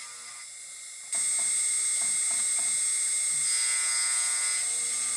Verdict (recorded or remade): recorded